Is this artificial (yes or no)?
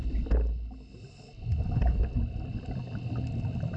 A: no